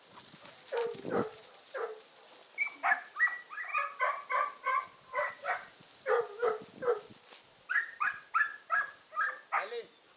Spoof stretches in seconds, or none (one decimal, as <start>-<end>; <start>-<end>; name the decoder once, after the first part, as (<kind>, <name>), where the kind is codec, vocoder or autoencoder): none